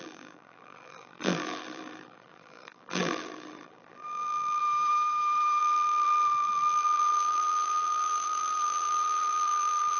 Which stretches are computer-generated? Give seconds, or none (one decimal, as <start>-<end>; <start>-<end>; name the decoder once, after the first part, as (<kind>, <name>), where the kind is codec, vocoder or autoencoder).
0.0-4.6 (vocoder, BigVGAN v2); 5.6-10.0